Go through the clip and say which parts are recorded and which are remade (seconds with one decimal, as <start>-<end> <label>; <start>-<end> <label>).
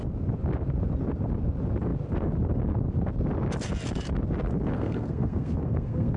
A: 0.0-4.7 recorded; 4.7-6.2 remade